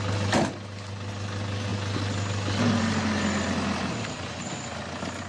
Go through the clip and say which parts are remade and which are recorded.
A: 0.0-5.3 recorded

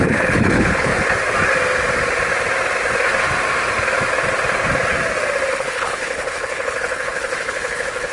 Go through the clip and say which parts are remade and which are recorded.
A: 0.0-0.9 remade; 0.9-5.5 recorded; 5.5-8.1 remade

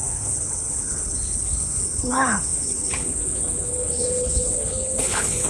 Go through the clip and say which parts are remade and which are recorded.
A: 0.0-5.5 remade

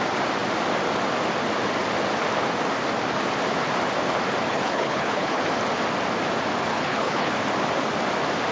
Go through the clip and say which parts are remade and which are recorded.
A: 0.0-4.5 recorded; 4.5-5.4 remade; 5.4-6.7 recorded; 6.7-7.3 remade; 7.3-8.5 recorded

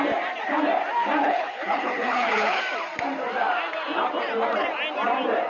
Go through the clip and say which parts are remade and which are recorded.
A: 0.0-1.2 recorded; 1.2-2.6 remade; 2.6-5.5 recorded